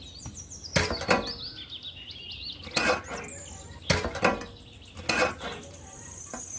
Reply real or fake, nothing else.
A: real